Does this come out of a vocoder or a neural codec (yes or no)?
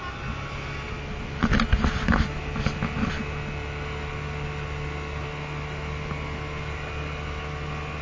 no